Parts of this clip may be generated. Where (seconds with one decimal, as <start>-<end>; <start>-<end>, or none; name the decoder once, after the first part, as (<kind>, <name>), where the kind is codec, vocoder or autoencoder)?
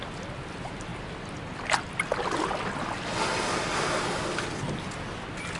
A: none